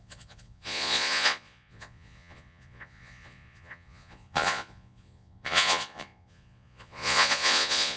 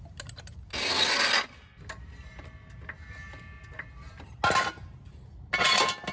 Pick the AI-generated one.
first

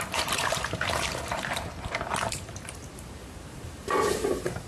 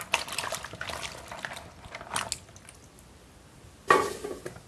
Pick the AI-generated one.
first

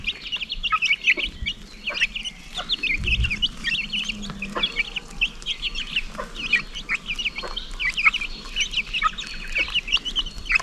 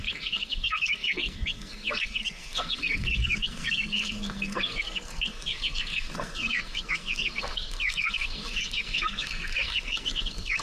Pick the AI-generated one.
second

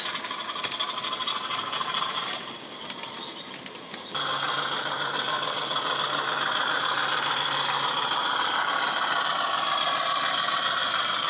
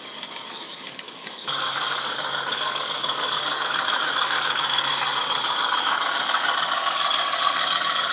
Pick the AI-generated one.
second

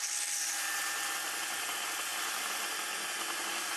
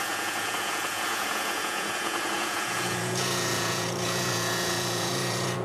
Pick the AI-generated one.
second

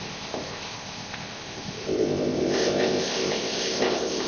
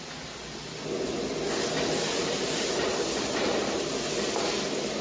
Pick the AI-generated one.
first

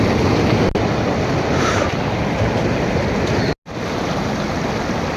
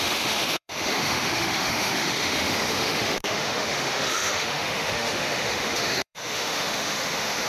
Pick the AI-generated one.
second